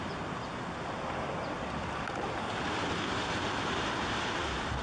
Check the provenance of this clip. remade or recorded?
recorded